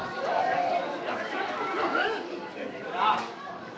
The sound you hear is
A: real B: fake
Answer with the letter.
B